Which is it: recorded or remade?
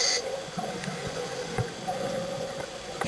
remade